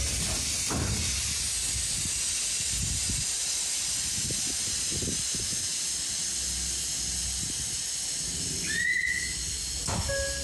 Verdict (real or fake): real